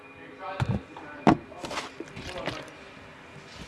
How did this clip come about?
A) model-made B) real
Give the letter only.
B